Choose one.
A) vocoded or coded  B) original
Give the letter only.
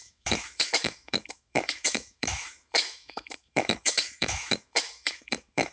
A